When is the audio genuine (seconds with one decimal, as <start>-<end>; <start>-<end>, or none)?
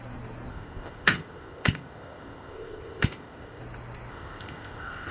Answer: 0.0-0.5; 3.6-4.1